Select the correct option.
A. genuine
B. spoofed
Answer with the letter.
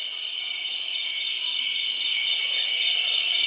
A